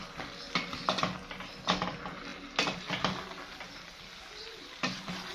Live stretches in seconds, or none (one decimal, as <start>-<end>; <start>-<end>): 0.0-5.3